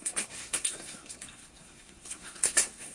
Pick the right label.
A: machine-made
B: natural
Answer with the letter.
A